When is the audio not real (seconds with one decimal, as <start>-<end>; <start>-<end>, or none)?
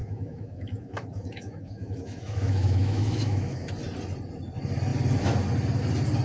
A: 0.0-3.7